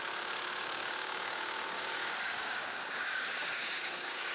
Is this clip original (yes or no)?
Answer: no